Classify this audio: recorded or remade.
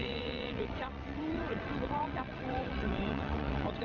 remade